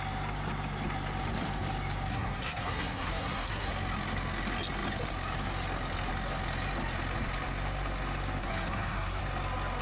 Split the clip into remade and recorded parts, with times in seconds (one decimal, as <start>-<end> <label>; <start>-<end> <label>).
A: 0.0-2.1 recorded; 2.1-3.7 remade; 3.7-8.4 recorded; 8.4-9.2 remade; 9.2-9.8 recorded

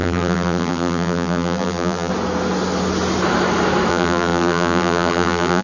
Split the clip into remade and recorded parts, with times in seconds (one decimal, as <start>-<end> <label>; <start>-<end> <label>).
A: 0.0-2.1 remade; 2.1-3.9 recorded; 3.9-5.6 remade